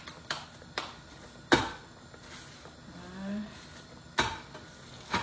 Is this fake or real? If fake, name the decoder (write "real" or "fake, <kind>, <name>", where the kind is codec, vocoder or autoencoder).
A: real